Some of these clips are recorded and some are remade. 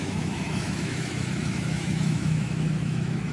remade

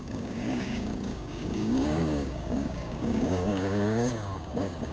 remade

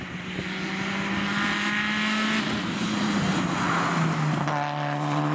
recorded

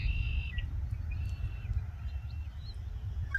recorded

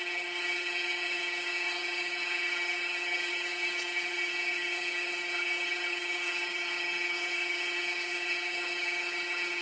remade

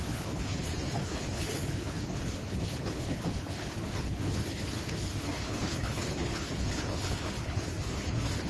remade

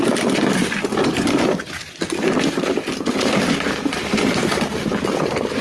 remade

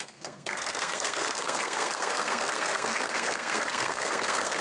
remade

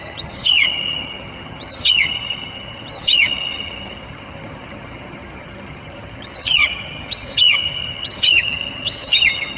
remade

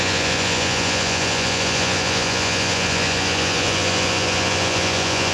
remade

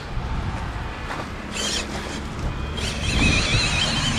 recorded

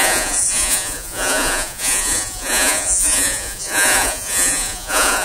remade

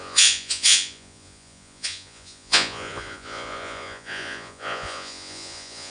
remade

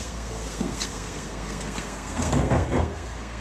remade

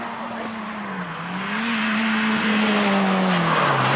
recorded